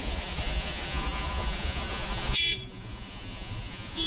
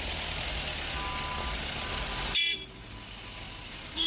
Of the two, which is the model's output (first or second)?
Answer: first